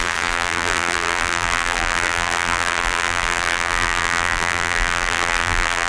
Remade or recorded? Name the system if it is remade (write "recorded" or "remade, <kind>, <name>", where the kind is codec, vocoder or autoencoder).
remade, vocoder, BigVGAN v2